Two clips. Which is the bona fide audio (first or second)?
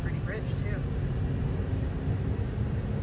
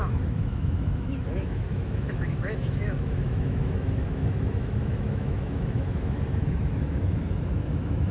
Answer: first